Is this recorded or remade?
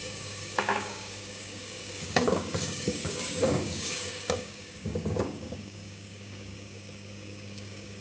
remade